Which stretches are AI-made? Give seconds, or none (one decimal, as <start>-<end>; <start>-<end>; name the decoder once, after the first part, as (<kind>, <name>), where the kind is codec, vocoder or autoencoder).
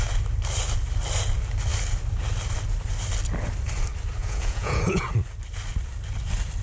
4.2-5.0 (vocoder, Vocos)